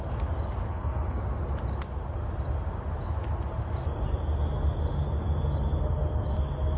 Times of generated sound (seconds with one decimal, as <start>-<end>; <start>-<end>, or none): 0.7-1.2